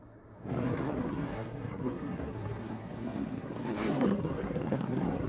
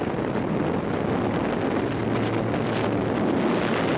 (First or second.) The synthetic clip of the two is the first